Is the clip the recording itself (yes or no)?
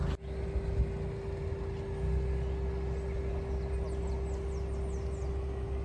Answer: yes